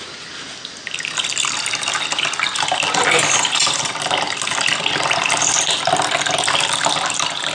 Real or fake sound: real